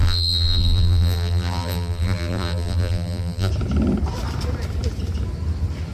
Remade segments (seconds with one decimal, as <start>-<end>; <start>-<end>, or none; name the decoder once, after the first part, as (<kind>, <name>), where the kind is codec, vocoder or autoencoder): 0.0-3.5 (vocoder, BigVGAN v2)